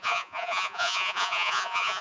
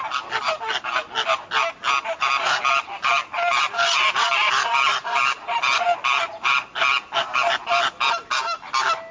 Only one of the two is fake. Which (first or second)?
first